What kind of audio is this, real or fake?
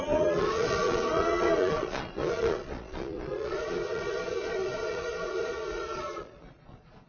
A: fake